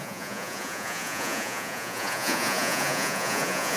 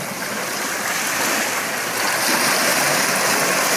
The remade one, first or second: first